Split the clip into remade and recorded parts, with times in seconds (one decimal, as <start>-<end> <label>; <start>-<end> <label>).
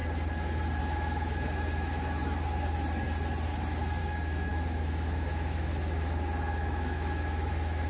0.0-0.8 recorded; 0.8-2.2 remade; 2.2-4.0 recorded; 4.0-7.9 remade